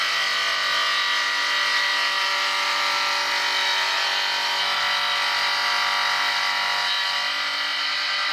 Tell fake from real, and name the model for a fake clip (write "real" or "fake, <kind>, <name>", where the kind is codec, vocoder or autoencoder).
real